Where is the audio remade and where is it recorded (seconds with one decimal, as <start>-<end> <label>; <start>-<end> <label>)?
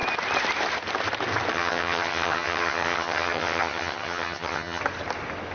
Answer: 0.0-1.5 recorded; 1.5-4.8 remade; 4.8-5.5 recorded